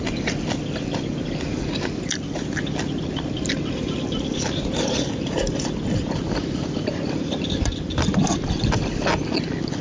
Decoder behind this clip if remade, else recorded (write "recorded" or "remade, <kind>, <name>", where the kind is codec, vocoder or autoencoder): recorded